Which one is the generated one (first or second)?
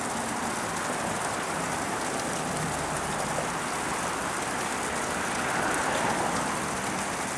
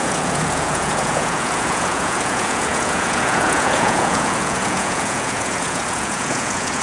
second